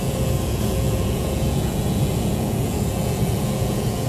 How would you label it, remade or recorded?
remade